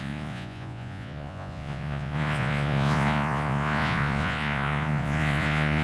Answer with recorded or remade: remade